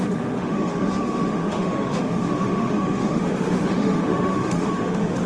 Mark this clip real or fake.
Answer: fake